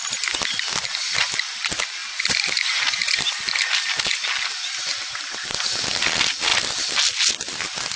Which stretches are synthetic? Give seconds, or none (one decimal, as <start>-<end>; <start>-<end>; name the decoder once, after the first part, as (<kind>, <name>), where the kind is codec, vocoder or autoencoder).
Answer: 2.0-5.3 (vocoder, BigVGAN v2); 6.5-7.3